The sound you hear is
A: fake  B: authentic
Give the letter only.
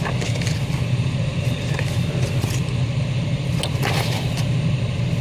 B